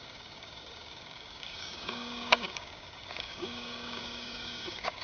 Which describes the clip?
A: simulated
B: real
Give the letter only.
A